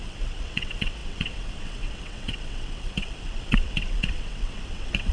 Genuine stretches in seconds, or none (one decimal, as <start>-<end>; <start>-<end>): none